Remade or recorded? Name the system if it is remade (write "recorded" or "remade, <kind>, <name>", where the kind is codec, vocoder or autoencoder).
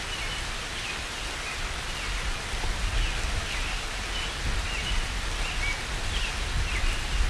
recorded